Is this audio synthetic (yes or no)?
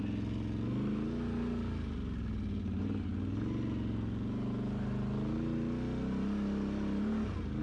no